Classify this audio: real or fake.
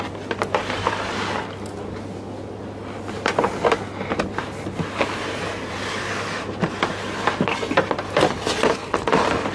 real